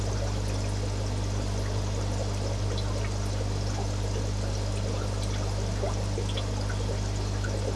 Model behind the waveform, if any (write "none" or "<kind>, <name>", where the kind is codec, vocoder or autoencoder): none